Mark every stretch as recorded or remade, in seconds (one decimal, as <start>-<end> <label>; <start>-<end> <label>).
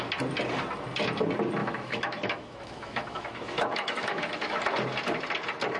0.0-1.6 recorded; 1.6-4.6 remade; 4.6-5.8 recorded